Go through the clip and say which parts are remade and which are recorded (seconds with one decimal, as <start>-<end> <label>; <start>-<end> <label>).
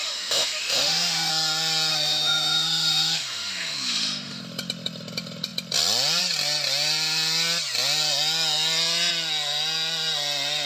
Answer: 0.0-1.3 remade; 1.3-1.9 recorded; 1.9-4.4 remade; 4.4-10.7 recorded